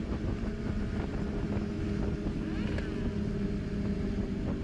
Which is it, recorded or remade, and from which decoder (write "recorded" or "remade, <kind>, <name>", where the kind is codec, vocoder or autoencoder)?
recorded